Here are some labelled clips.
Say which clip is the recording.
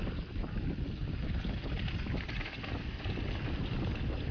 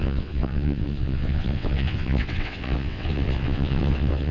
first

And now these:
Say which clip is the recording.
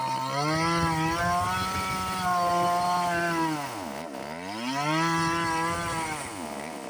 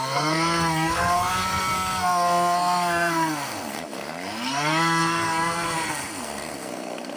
first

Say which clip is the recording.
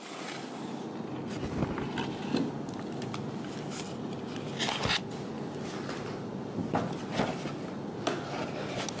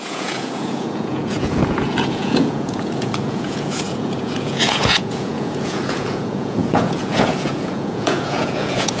first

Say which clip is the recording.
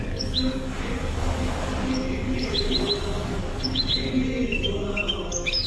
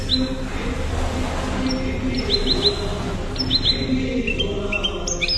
second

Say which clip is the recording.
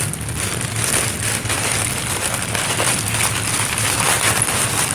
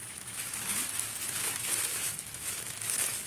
first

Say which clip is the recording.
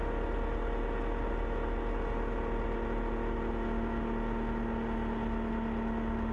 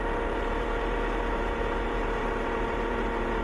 first